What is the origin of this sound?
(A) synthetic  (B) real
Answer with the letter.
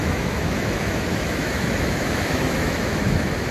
A